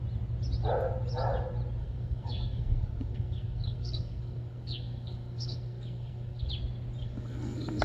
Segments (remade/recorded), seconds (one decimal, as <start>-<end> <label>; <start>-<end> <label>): 0.0-1.8 recorded; 1.8-6.5 remade; 6.5-7.0 recorded; 7.0-7.8 remade